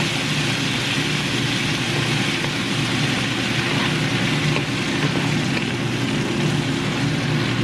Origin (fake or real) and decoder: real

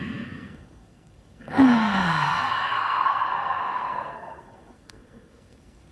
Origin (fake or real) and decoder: fake, codec, SNAC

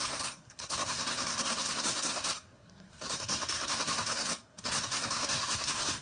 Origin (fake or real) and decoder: fake, codec, SNAC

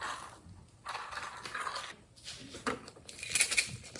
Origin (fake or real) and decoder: real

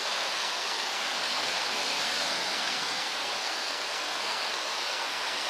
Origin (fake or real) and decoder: fake, codec, SNAC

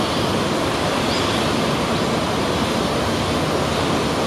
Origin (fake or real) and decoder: real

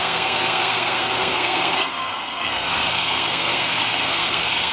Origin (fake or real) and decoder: fake, codec, SNAC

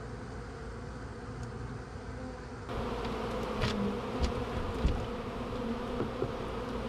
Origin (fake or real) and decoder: real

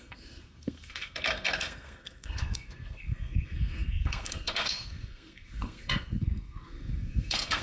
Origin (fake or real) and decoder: fake, codec, SNAC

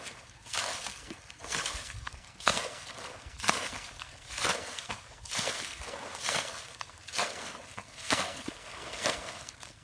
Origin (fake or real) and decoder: fake, codec, SNAC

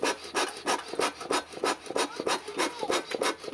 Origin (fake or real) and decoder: real